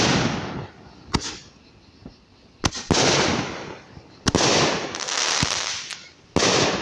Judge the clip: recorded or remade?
recorded